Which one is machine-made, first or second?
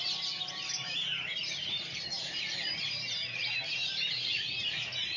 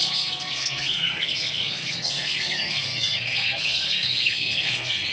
second